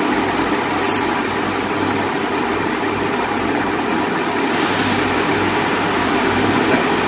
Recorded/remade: recorded